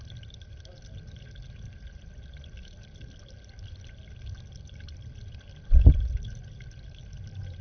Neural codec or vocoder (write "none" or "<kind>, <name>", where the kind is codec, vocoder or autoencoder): none